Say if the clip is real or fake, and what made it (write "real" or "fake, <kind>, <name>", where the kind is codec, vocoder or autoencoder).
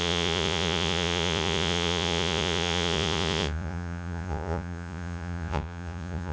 fake, vocoder, Vocos